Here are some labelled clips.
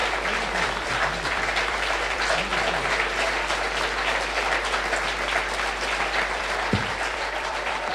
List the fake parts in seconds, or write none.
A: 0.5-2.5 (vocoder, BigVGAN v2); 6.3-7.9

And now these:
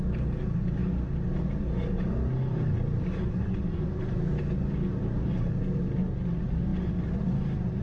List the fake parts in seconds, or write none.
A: none

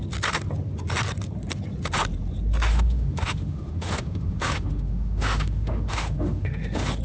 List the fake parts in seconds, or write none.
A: 2.7-7.0 (autoencoder, DAC-VAE)

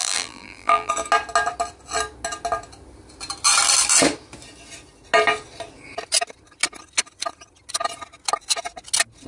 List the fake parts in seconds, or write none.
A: 0.0-0.9 (vocoder, BigVGAN v2)

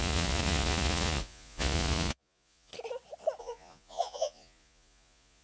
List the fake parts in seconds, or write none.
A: 0.0-2.7 (vocoder, Vocos); 3.4-5.4

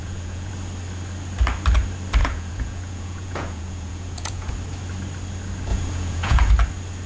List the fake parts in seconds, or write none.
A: 0.0-0.5 (vocoder, Vocos); 2.2-4.5; 5.7-6.5